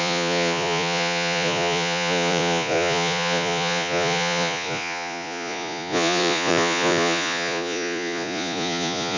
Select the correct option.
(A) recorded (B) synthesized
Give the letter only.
B